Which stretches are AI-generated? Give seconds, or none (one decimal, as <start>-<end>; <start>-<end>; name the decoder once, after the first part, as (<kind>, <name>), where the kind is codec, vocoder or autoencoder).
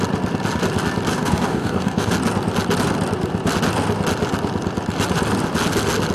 1.1-2.1 (codec, DAC)